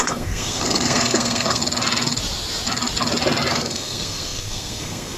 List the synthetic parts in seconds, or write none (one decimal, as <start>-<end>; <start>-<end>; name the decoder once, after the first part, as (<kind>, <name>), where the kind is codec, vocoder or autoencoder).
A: 0.0-1.6 (codec, SNAC); 3.5-5.2